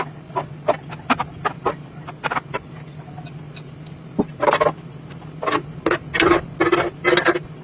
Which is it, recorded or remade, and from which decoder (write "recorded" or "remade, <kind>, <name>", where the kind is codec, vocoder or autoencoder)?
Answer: recorded